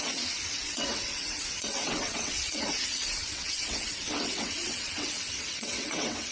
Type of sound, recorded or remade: remade